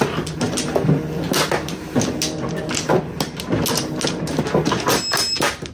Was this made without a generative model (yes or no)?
yes